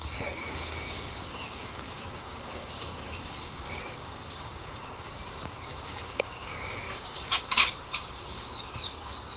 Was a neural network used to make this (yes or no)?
yes